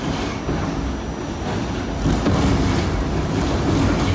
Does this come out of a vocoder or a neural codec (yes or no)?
no